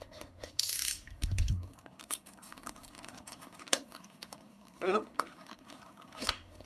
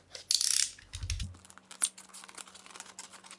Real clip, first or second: second